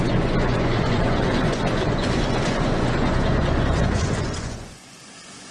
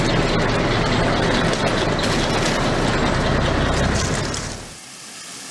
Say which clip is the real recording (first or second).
second